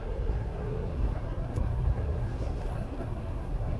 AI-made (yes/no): yes